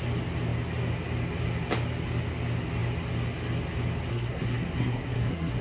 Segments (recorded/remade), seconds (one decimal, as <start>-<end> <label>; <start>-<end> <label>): 0.0-4.1 recorded; 4.1-5.6 remade